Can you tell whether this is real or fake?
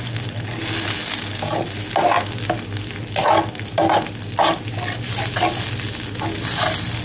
real